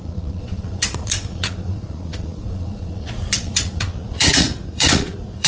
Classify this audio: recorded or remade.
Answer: remade